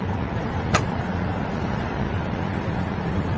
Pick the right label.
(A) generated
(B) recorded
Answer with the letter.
A